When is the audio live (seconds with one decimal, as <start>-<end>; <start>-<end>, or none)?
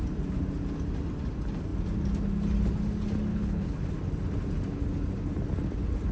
0.0-3.3; 3.8-6.1